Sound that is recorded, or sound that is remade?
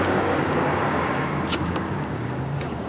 remade